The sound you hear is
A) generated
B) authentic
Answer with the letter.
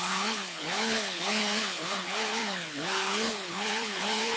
A